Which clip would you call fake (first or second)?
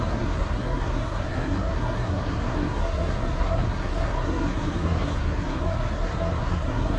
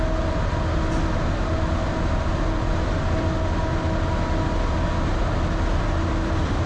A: first